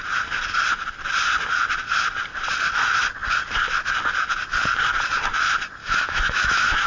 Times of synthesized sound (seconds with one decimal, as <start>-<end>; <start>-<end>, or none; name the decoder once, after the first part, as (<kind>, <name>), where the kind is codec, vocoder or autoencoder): 5.8-6.9 (autoencoder, DAC-VAE)